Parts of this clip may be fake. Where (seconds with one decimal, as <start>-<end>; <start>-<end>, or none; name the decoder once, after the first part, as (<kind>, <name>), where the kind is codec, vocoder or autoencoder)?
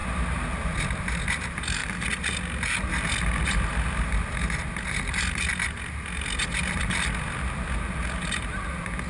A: none